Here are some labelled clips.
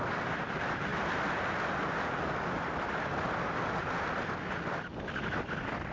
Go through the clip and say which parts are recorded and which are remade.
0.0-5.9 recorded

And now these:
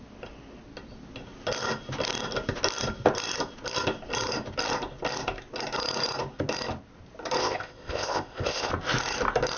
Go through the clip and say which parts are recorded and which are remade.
0.0-7.4 recorded; 7.4-8.7 remade; 8.7-9.6 recorded

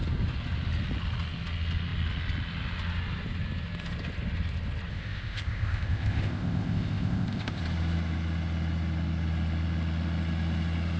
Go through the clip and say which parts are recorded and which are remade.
0.0-4.9 recorded; 4.9-7.6 remade; 7.6-11.0 recorded

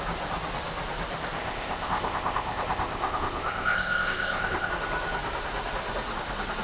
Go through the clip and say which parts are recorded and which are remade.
0.0-1.4 recorded; 1.4-4.7 remade; 4.7-6.6 recorded

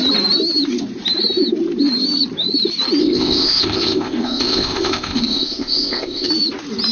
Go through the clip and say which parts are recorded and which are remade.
0.0-3.0 recorded; 3.0-6.3 remade; 6.3-6.9 recorded

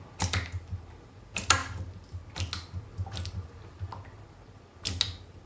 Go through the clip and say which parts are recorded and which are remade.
0.0-5.5 recorded

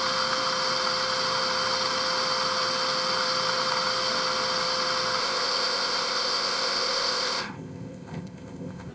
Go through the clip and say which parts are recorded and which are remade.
0.0-5.2 recorded; 5.2-8.9 remade